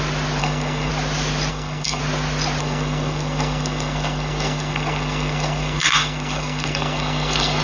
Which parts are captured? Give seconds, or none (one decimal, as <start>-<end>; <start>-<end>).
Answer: 0.0-0.4; 0.9-1.5; 2.0-2.6